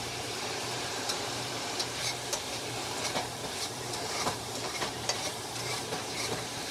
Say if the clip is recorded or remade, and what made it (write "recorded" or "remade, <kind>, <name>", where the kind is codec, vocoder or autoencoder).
remade, vocoder, BigVGAN v2